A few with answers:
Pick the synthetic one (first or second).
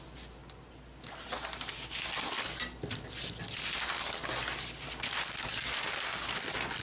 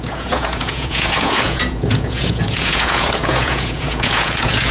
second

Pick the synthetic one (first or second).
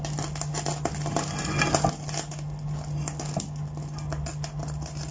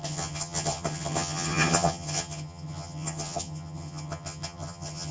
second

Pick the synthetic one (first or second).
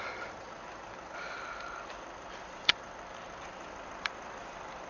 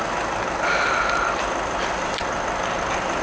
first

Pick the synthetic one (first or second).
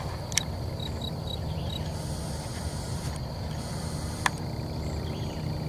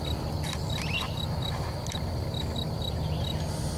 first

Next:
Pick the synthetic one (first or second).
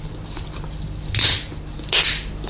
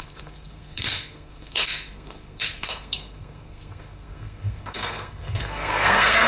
second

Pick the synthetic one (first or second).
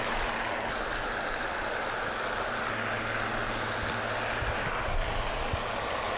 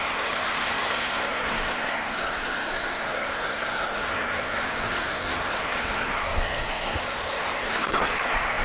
second